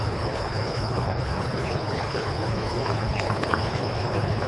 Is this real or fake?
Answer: fake